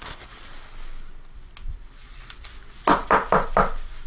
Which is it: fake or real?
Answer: real